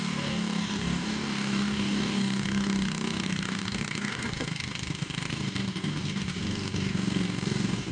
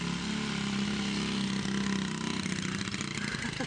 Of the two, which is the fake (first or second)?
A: first